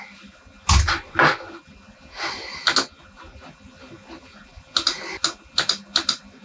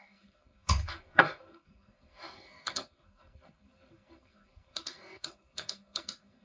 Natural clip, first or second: first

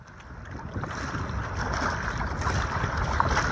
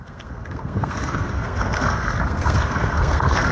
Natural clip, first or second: first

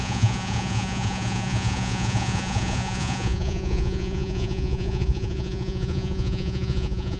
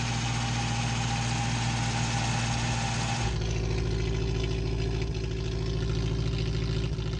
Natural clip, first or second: second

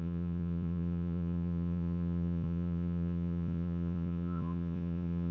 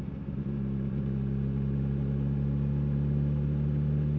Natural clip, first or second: second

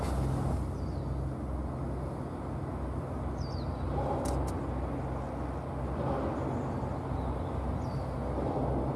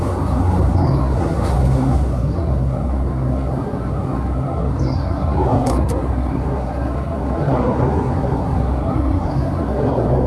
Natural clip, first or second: first